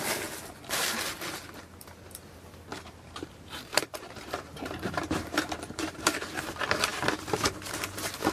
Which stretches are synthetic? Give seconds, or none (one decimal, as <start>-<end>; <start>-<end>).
2.7-6.4